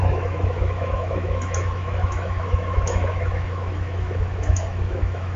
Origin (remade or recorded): remade